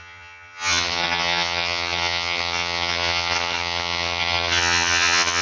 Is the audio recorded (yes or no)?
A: no